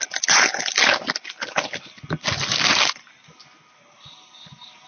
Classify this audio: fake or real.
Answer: real